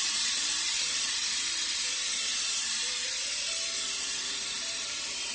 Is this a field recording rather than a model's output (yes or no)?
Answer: no